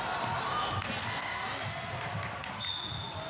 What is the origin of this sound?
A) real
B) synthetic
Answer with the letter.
A